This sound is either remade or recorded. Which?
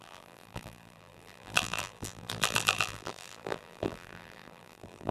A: remade